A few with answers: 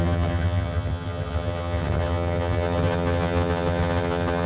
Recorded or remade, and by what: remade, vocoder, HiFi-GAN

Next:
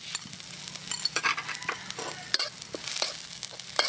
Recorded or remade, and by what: recorded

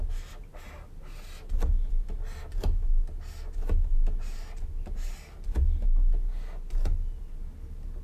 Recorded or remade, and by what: recorded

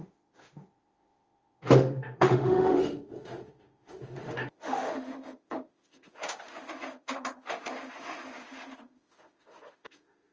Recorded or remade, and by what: remade, autoencoder, DAC-VAE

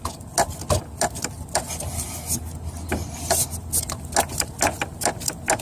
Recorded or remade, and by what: recorded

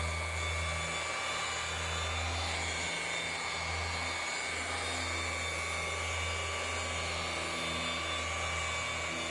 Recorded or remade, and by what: recorded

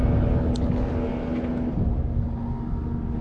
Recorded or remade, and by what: recorded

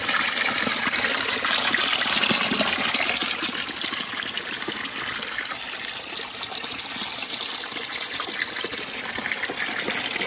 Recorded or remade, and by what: recorded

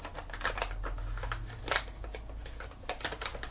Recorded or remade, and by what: recorded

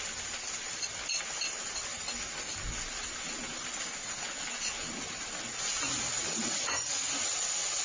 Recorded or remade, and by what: recorded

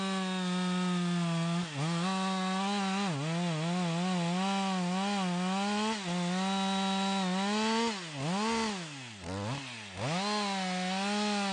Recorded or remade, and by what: recorded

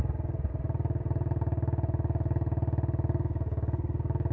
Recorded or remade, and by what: recorded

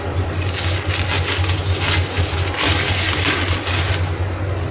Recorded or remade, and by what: recorded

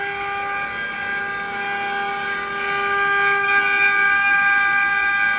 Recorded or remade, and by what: recorded